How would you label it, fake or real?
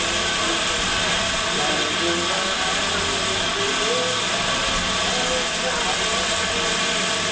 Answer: real